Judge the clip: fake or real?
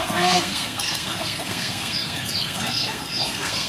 fake